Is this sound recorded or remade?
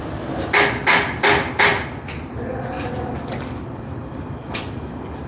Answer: recorded